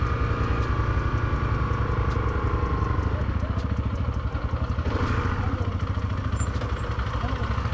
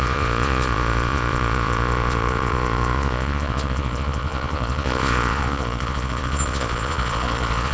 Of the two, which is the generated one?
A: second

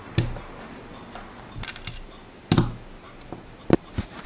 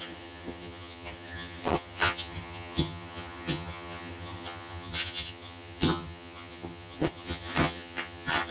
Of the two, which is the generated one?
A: second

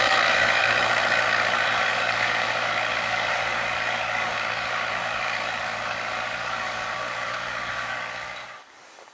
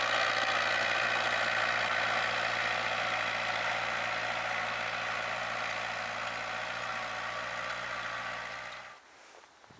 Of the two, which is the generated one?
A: first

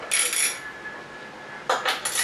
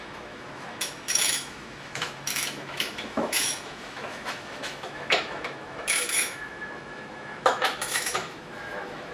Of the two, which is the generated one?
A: second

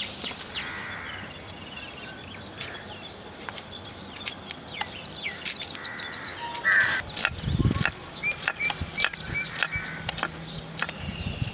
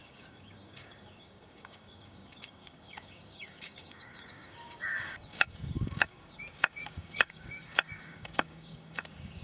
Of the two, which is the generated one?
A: second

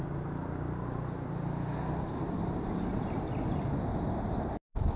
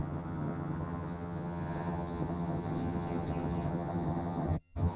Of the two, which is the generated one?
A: second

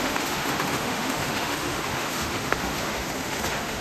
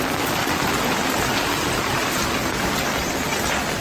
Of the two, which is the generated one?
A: first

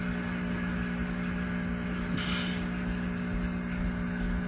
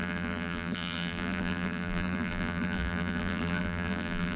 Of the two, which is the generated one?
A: second